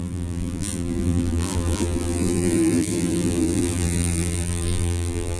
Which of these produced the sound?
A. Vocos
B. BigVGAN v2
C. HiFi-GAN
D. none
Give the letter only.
B